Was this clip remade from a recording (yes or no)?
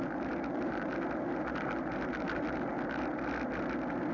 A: no